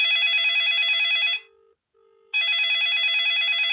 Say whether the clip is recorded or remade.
recorded